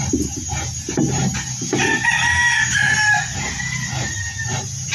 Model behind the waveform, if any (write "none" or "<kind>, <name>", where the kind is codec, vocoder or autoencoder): none